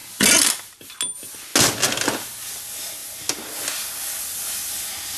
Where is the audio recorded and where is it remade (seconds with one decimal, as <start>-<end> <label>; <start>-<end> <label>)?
0.0-5.2 recorded